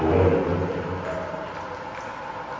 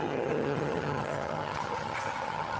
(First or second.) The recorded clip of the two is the first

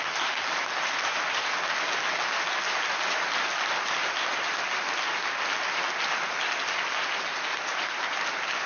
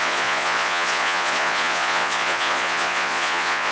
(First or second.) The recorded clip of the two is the first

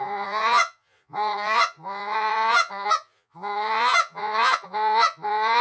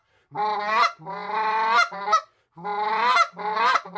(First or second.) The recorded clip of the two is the second